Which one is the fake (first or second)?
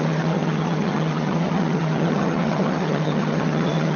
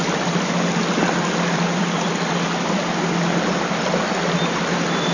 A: first